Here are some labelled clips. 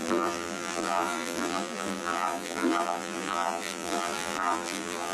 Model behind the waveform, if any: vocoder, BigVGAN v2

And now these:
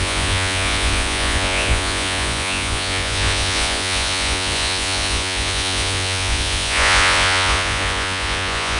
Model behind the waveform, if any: vocoder, Vocos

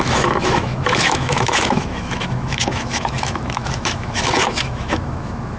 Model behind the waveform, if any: autoencoder, DAC-VAE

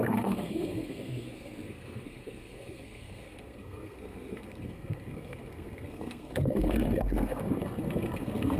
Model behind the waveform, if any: codec, SNAC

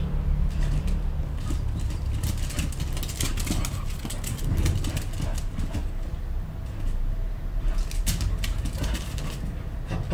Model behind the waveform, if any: none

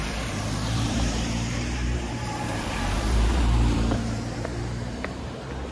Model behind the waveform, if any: vocoder, BigVGAN v2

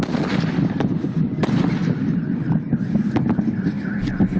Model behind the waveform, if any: none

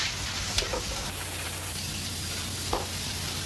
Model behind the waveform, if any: none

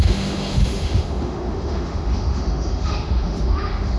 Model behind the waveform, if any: autoencoder, DAC-VAE